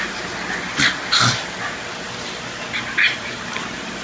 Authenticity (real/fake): real